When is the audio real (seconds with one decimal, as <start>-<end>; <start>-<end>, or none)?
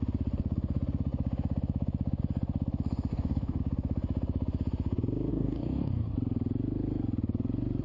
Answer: 0.0-3.1; 3.6-5.3; 6.1-7.8